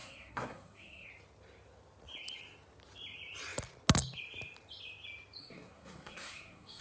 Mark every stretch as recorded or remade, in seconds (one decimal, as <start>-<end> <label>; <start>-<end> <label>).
0.0-1.1 remade; 1.1-5.4 recorded; 5.4-6.8 remade